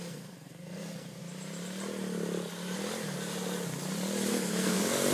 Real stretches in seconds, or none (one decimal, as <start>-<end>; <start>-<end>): 1.2-4.3